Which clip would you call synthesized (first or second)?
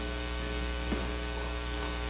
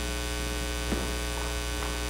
first